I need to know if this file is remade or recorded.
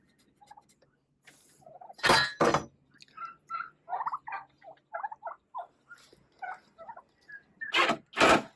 recorded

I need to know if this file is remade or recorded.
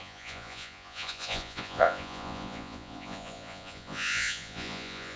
remade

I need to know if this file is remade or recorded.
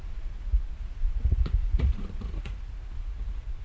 remade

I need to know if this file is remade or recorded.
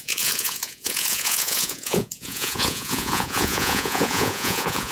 remade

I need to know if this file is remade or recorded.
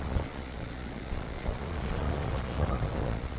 remade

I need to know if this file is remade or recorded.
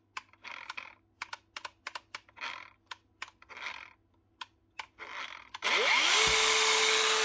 recorded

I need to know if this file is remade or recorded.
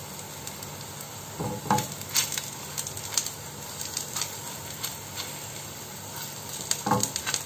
recorded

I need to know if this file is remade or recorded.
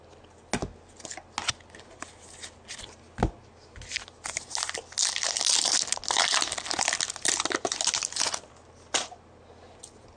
recorded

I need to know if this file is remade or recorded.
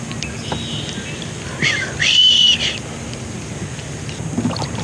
recorded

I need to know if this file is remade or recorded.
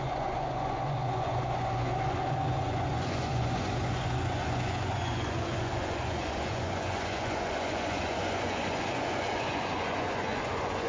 remade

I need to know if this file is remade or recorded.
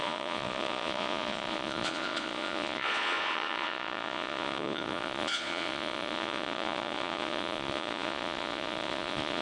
remade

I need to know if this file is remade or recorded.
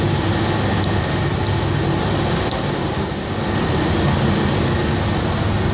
recorded